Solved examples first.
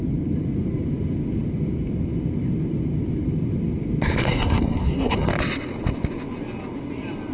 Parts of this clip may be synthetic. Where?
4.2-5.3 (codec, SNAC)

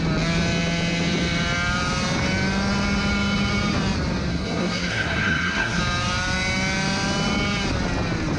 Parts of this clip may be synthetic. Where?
4.3-5.8 (codec, SNAC)